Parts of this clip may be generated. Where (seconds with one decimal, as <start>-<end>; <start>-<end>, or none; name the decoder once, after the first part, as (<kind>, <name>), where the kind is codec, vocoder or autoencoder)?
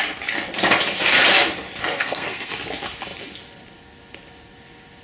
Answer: 1.8-2.5 (codec, SNAC)